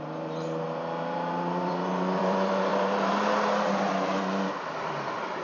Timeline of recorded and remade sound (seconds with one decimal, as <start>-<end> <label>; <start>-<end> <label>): 0.0-5.4 remade